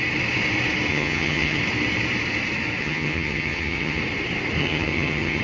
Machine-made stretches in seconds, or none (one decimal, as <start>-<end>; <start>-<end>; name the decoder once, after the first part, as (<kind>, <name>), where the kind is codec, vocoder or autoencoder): 0.9-1.6 (vocoder, HiFi-GAN); 2.8-4.0; 4.6-5.4